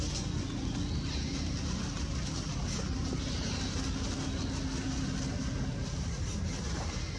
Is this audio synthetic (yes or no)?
no